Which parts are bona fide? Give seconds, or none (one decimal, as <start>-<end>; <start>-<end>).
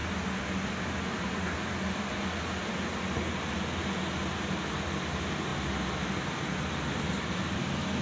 0.0-8.0